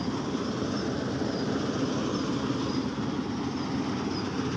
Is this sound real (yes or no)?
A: yes